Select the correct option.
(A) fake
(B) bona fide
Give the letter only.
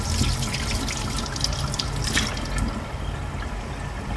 B